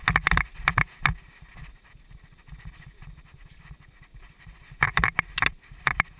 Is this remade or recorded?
recorded